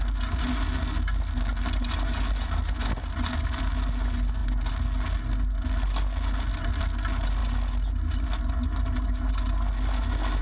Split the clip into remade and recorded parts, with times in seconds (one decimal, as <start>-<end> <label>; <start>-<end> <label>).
0.0-10.4 recorded

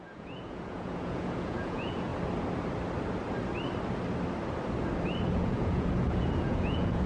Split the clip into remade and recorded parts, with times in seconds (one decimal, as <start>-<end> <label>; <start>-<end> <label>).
0.0-2.1 remade; 2.1-5.3 recorded; 5.3-7.1 remade

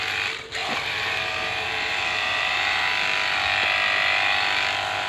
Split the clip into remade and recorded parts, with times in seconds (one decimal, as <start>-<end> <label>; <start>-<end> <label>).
0.0-0.6 recorded; 0.6-2.9 remade; 2.9-5.1 recorded

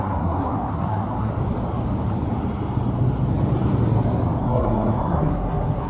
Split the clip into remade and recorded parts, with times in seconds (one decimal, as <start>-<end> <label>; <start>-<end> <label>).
0.0-1.3 remade; 1.3-4.4 recorded; 4.4-5.9 remade

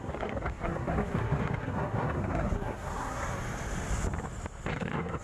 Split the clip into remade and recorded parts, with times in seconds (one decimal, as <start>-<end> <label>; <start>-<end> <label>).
0.0-3.3 remade; 3.3-4.7 recorded; 4.7-5.2 remade

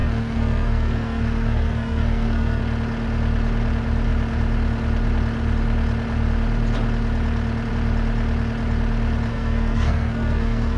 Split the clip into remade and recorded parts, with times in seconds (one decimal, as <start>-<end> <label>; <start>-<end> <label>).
0.0-2.6 remade; 2.6-9.3 recorded; 9.3-10.8 remade